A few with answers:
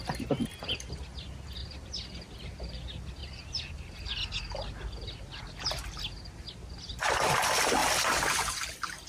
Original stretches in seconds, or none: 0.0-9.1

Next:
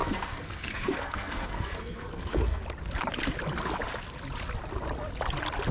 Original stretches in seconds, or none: 2.6-5.7

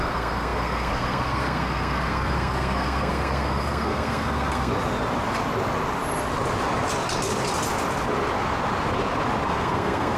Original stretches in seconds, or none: 4.7-9.5

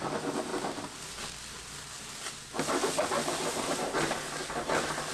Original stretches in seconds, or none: 0.0-5.1

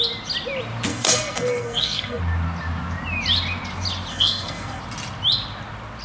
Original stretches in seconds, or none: 0.0-0.9; 2.2-4.1; 4.8-6.0

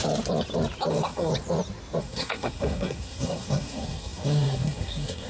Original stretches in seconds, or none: 0.0-0.9; 1.3-2.0